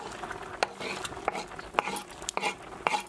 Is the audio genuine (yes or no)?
yes